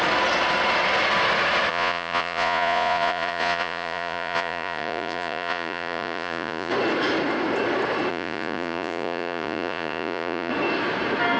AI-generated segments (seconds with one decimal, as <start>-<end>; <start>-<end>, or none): 1.7-6.7; 8.1-10.5